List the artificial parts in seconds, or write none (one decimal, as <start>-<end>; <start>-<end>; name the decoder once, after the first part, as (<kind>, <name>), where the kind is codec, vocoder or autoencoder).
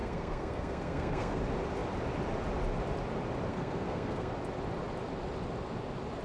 0.0-1.4 (codec, SNAC); 3.5-4.3